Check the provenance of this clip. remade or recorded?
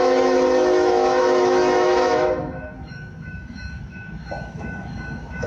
remade